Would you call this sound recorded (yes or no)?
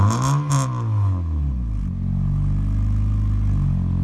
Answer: yes